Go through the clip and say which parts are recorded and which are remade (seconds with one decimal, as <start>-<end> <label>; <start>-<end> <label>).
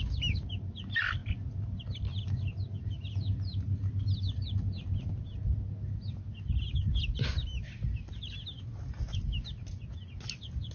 0.0-10.7 recorded